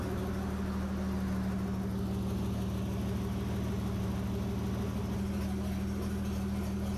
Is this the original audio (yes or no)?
yes